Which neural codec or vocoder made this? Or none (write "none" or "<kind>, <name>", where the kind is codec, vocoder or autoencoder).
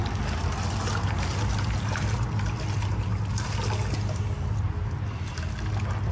none